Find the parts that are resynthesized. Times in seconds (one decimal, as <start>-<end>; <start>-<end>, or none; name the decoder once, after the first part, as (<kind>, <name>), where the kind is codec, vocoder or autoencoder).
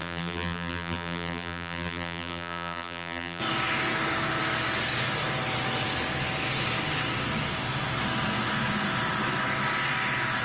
0.0-3.4 (vocoder, BigVGAN v2)